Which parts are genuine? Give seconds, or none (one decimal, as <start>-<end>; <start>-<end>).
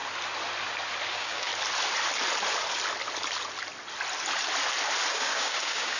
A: 0.0-1.1; 1.5-5.1